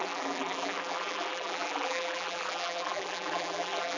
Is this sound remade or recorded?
remade